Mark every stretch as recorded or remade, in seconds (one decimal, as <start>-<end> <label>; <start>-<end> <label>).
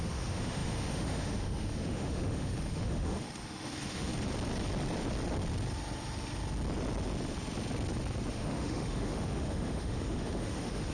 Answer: 0.0-4.1 remade; 4.1-8.3 recorded; 8.3-10.9 remade